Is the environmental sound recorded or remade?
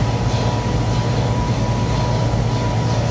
recorded